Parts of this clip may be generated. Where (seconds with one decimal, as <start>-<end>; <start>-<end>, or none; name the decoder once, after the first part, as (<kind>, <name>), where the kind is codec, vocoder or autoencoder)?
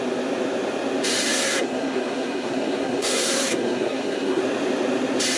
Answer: 1.3-4.4 (codec, SNAC)